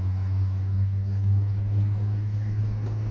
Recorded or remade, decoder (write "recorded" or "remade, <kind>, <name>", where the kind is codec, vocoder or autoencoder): remade, codec, DAC